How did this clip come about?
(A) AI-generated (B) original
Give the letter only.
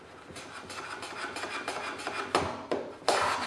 B